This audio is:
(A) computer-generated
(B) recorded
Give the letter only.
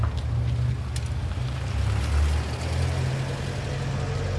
B